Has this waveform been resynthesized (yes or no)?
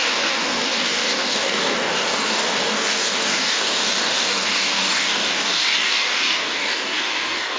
yes